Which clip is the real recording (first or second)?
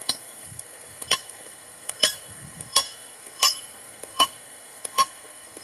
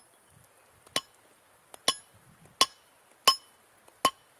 second